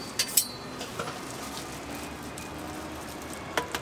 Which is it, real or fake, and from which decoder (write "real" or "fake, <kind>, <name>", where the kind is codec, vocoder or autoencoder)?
real